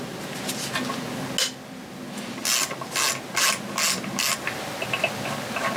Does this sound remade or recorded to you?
recorded